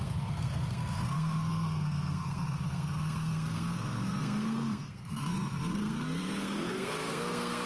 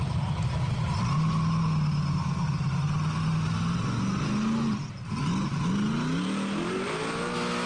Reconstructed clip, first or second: first